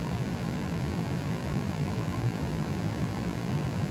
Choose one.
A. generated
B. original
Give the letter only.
A